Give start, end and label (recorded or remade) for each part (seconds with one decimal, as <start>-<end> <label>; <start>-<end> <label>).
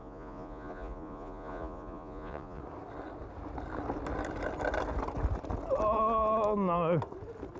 0.0-2.6 remade; 2.6-7.6 recorded